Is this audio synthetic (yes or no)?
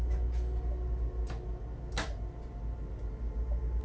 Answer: no